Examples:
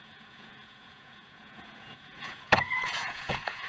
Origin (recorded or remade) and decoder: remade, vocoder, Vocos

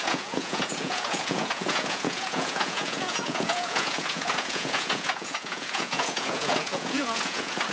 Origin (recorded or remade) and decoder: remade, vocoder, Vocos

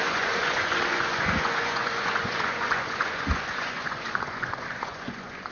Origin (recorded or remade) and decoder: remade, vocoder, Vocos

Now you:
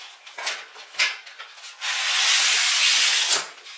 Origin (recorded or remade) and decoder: remade, vocoder, Vocos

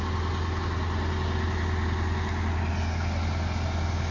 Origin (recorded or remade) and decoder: recorded